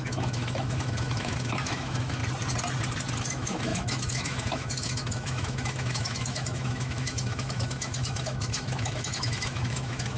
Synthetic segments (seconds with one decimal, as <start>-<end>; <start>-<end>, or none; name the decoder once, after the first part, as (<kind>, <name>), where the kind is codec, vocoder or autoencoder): 0.0-2.2 (autoencoder, DAC-VAE); 3.3-10.2